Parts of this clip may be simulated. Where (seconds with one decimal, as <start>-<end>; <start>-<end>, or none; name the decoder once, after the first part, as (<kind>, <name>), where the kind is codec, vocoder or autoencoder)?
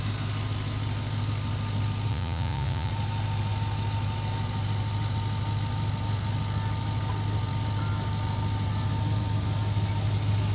2.1-2.9 (vocoder, Vocos)